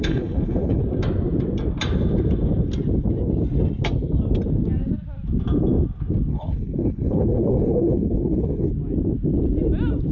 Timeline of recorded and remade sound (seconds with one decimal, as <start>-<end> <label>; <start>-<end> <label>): 0.0-0.8 remade; 0.8-6.3 recorded; 6.3-8.7 remade; 8.7-10.1 recorded